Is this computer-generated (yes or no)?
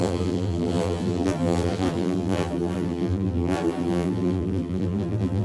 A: yes